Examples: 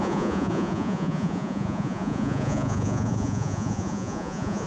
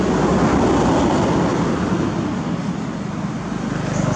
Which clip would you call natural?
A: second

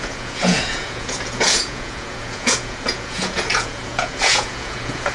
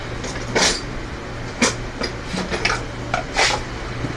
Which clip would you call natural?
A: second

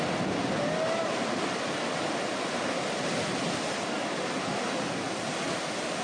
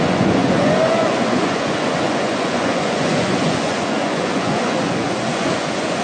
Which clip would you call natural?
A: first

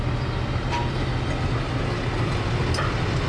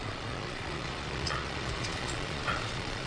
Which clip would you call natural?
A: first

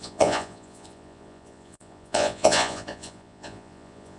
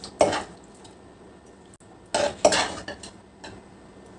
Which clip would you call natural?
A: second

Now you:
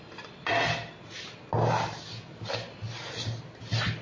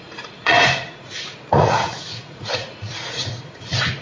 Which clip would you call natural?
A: first